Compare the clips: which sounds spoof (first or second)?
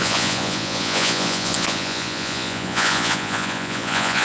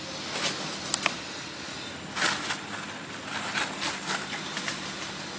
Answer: first